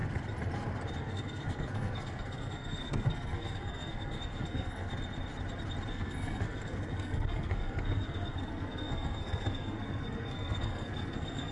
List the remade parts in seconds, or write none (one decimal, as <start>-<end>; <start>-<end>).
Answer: 1.0-4.9; 5.9-11.5